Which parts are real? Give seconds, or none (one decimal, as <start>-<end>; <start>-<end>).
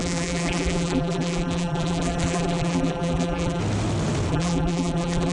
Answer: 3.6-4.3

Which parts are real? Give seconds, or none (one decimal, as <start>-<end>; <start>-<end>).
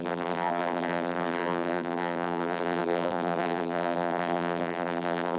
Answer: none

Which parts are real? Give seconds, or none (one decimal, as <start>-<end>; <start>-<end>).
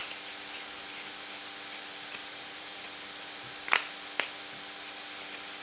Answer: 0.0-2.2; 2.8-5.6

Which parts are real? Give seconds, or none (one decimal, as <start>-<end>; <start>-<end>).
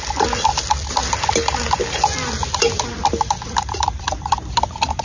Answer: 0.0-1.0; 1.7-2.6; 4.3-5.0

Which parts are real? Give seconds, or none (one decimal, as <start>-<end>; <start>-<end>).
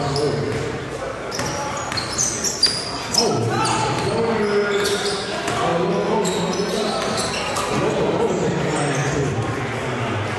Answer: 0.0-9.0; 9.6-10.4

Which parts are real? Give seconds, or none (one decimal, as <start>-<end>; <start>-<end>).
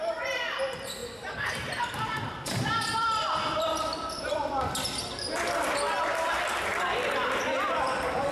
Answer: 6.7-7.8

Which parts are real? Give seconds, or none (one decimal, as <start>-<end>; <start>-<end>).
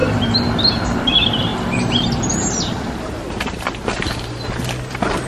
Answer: 1.1-1.5; 3.7-5.3